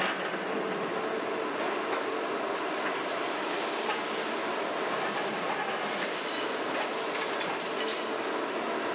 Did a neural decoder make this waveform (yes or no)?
no